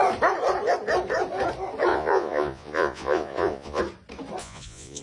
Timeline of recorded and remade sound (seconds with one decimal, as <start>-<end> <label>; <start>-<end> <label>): 0.0-1.9 recorded; 1.9-3.8 remade; 3.8-4.4 recorded; 4.4-5.0 remade